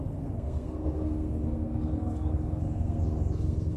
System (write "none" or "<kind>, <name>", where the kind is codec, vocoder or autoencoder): codec, SNAC